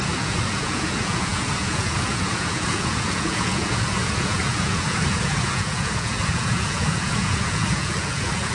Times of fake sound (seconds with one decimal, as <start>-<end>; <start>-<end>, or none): 0.0-8.5